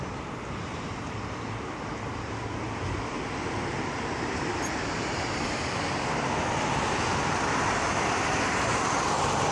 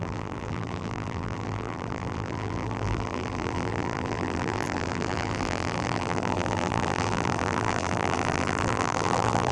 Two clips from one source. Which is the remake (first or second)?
second